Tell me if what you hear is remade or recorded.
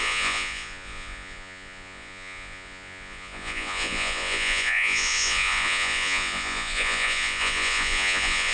remade